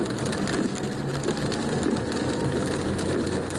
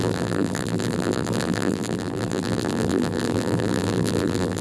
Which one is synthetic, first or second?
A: second